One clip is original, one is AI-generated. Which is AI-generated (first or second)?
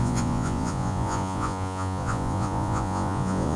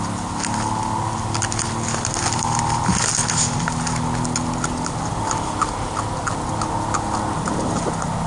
first